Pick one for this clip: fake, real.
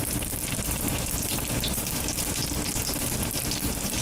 real